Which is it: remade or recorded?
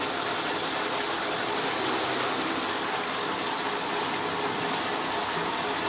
recorded